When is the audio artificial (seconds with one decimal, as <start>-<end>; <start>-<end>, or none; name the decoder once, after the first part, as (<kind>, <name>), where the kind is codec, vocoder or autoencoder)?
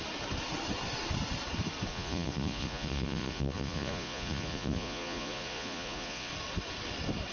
1.9-6.3 (vocoder, Vocos)